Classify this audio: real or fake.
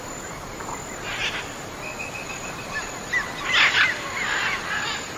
real